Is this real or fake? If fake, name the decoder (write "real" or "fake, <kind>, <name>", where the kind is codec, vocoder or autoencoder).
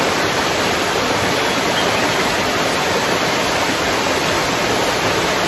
fake, vocoder, BigVGAN v2